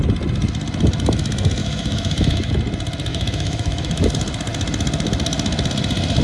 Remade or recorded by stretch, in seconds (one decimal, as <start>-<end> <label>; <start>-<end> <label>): 0.0-1.6 recorded; 1.6-2.5 remade; 2.5-3.1 recorded; 3.1-4.1 remade; 4.1-6.2 recorded